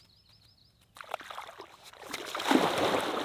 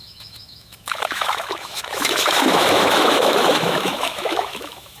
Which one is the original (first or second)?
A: first